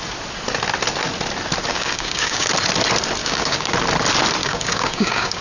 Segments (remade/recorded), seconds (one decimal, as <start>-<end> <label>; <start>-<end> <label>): 0.0-1.7 recorded; 1.7-2.5 remade; 2.5-3.2 recorded; 3.2-3.7 remade; 3.7-4.4 recorded; 4.4-5.4 remade